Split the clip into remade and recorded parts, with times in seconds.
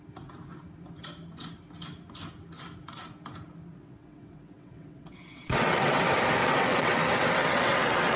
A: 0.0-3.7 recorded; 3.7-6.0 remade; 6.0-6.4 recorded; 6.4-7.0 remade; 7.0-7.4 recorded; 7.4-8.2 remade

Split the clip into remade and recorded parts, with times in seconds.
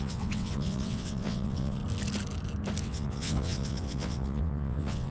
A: 0.0-1.8 remade; 1.8-2.8 recorded; 2.8-5.1 remade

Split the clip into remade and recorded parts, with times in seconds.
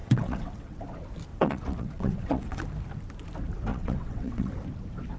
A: 0.0-0.8 remade; 0.8-1.3 recorded; 1.3-2.6 remade; 2.6-3.7 recorded; 3.7-4.5 remade; 4.5-5.2 recorded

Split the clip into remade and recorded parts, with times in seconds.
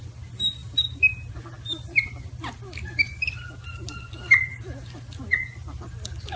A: 0.0-6.4 recorded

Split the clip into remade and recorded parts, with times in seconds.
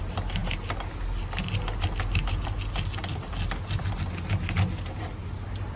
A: 0.0-5.8 recorded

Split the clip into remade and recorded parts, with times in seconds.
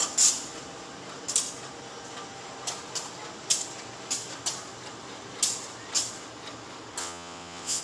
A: 0.0-7.0 recorded; 7.0-7.8 remade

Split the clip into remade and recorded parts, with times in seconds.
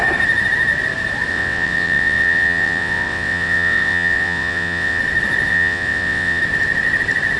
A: 0.0-1.3 recorded; 1.3-5.0 remade; 5.0-5.5 recorded; 5.5-6.4 remade; 6.4-7.4 recorded